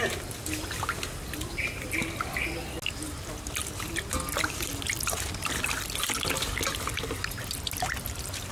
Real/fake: real